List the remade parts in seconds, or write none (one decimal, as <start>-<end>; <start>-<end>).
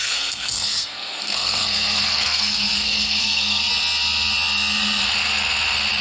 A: 0.0-3.7